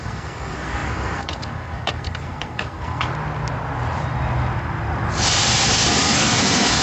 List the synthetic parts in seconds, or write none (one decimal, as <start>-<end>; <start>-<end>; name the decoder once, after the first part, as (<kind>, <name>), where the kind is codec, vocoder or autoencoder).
0.0-3.1 (codec, SNAC); 6.0-6.8